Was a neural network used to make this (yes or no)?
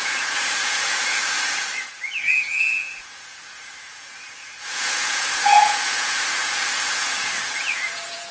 yes